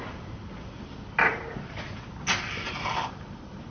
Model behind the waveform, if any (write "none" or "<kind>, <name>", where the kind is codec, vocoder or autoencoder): none